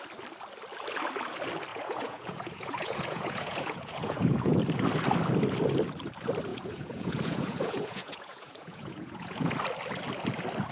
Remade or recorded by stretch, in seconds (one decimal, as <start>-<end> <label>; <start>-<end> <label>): 0.0-1.7 recorded; 1.7-4.6 remade; 4.6-6.5 recorded; 6.5-9.5 remade; 9.5-10.7 recorded